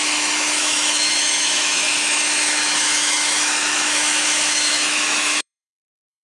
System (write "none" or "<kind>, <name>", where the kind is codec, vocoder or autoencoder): autoencoder, DAC-VAE